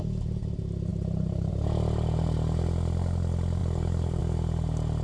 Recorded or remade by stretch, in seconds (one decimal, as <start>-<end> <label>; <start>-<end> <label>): 0.0-0.9 recorded; 0.9-1.5 remade; 1.5-3.6 recorded; 3.6-4.2 remade; 4.2-5.0 recorded